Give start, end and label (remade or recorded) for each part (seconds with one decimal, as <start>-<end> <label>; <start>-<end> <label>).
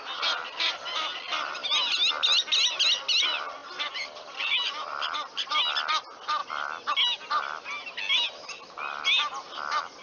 0.0-3.6 recorded; 3.6-5.5 remade; 5.5-6.4 recorded; 6.4-6.9 remade; 6.9-10.0 recorded